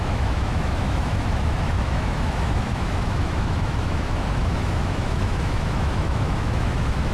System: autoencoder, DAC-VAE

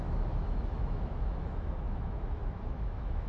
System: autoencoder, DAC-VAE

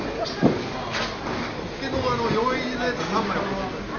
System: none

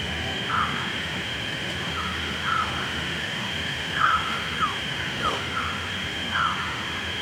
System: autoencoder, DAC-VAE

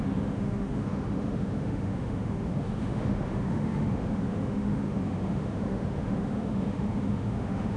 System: autoencoder, DAC-VAE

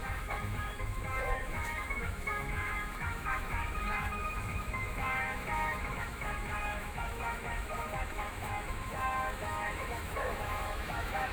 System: autoencoder, DAC-VAE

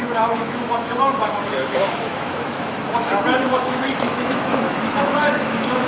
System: autoencoder, DAC-VAE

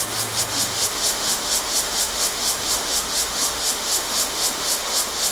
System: autoencoder, DAC-VAE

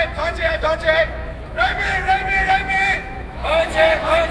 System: autoencoder, DAC-VAE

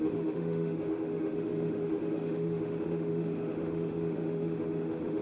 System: autoencoder, DAC-VAE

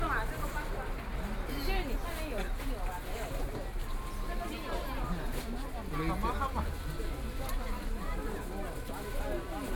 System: none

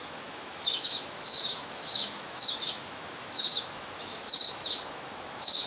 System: autoencoder, DAC-VAE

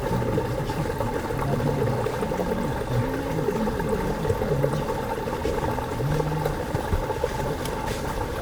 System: none